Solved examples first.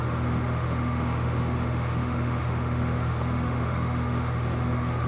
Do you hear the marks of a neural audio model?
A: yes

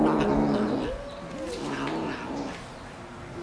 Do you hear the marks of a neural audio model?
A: no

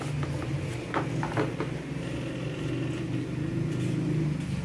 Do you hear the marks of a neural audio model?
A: no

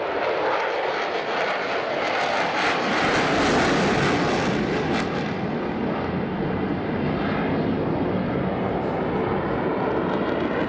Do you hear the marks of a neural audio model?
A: no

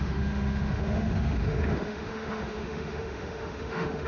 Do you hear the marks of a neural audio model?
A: yes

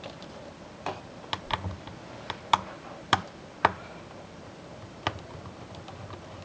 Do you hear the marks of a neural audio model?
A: yes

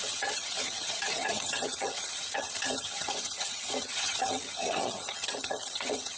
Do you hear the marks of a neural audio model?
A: yes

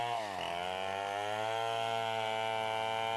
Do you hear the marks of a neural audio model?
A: no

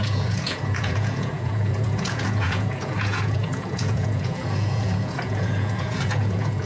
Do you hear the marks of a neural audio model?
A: yes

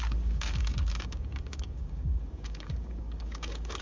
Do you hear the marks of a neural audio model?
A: yes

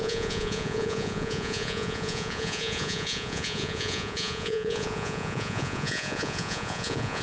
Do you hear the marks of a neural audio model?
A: yes